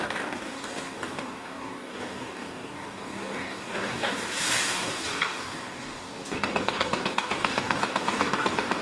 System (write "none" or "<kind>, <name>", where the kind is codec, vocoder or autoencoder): codec, DAC